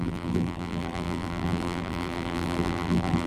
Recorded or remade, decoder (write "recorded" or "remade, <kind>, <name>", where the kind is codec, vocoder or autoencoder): remade, vocoder, BigVGAN v2